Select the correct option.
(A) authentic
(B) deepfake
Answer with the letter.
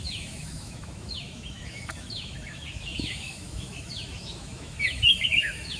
B